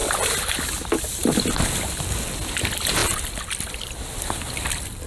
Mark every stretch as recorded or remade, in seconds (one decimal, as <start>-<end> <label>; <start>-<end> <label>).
0.0-5.1 recorded